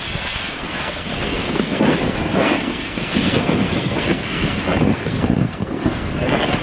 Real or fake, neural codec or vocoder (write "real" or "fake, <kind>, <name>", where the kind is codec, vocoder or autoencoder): fake, codec, SNAC